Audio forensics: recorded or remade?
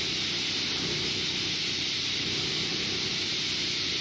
remade